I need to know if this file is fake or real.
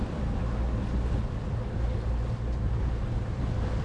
real